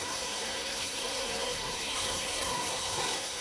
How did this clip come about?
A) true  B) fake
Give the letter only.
B